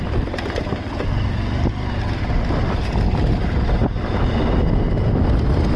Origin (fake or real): real